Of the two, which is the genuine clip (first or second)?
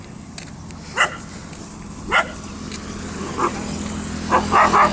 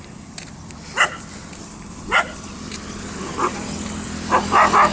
first